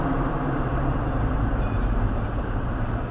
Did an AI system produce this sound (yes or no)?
yes